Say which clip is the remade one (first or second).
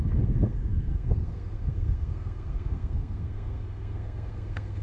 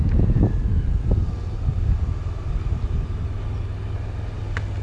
first